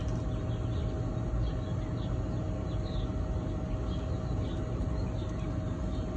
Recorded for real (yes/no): yes